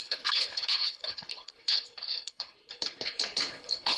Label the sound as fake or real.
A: fake